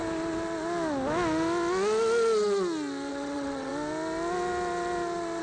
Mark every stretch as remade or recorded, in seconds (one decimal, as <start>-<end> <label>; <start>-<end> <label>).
0.0-3.1 recorded; 3.1-3.7 remade; 3.7-5.4 recorded